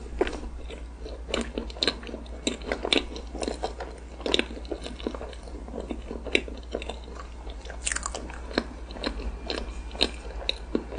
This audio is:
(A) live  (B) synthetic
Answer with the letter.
A